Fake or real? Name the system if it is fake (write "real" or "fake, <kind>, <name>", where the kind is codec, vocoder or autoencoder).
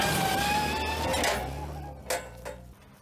real